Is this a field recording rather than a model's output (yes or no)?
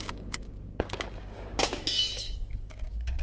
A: no